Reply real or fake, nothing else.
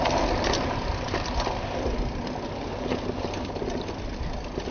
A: real